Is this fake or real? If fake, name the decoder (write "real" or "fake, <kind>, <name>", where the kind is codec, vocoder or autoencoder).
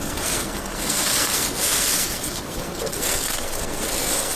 fake, codec, SNAC